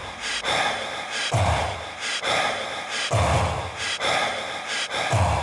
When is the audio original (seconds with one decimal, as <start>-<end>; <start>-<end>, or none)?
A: 0.0-5.4

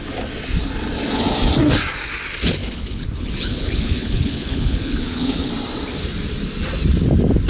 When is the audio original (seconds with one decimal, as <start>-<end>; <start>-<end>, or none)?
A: 0.0-2.6; 5.5-7.5

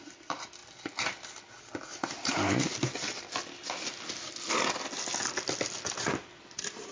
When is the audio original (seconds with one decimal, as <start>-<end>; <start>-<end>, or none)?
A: 0.0-6.9

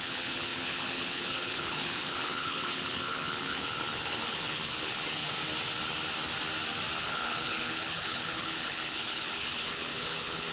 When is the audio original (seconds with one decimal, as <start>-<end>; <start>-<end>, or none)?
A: 5.2-7.0

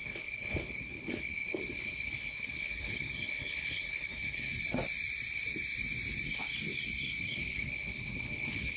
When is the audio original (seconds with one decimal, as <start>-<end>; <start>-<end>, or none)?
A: 4.5-7.2

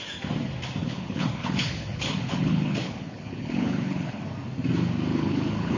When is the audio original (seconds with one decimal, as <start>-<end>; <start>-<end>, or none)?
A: 0.0-0.8; 4.2-5.1

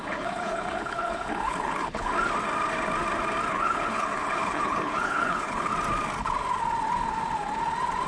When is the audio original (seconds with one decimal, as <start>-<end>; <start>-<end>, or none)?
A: 2.1-3.5; 5.7-8.1